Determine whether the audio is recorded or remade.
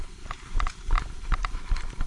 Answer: remade